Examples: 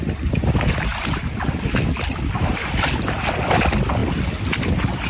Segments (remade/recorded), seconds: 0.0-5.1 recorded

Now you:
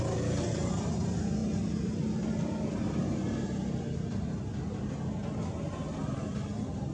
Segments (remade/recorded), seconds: 0.0-6.9 recorded